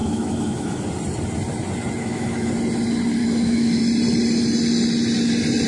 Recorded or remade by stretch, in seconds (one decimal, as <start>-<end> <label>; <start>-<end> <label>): 0.0-0.8 remade; 0.8-2.0 recorded; 2.0-2.5 remade; 2.5-3.2 recorded; 3.2-3.8 remade; 3.8-5.7 recorded